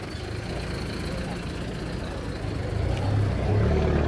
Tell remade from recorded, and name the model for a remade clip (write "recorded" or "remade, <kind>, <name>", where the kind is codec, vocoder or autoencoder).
recorded